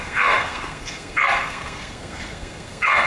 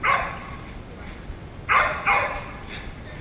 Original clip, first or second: second